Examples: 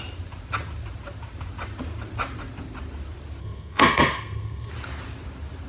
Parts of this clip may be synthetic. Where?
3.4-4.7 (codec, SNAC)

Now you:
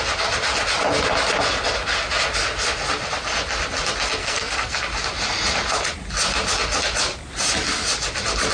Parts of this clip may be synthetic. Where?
4.2-4.8 (codec, SNAC)

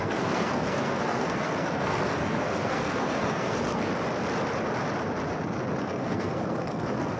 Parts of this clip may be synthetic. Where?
0.0-3.9 (codec, SNAC); 5.8-7.2

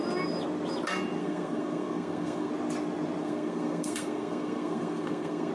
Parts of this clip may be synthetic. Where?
1.2-2.5 (codec, SNAC); 3.2-5.5